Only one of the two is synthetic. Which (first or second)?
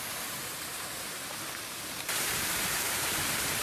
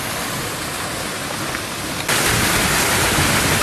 first